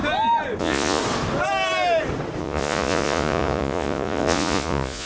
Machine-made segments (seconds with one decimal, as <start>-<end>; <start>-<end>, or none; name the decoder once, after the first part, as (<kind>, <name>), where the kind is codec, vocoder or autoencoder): 0.6-1.0 (vocoder, Vocos); 2.4-5.1